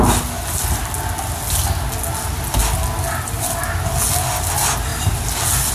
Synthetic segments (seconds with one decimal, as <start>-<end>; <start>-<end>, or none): none